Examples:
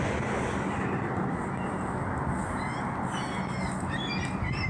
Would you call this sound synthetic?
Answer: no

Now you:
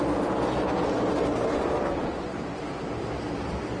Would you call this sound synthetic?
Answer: yes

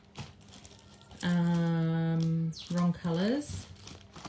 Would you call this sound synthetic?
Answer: no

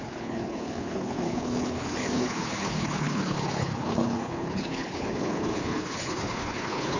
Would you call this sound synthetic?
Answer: yes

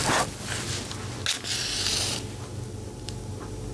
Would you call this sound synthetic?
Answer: no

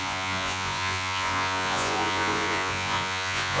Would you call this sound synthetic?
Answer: yes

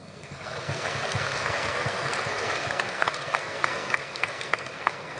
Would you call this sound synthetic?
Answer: yes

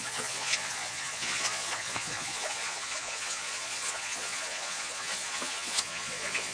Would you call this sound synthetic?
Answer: yes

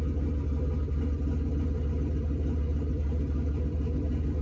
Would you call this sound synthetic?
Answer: no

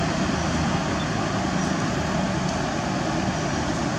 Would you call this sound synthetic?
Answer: no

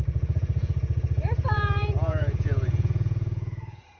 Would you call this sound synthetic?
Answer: yes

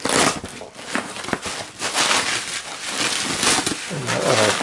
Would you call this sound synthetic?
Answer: no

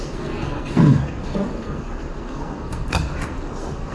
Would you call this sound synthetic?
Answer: yes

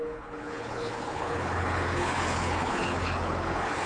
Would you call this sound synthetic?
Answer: yes